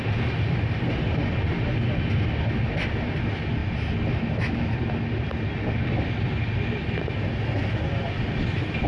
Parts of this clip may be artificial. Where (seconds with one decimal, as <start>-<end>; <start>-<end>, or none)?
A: none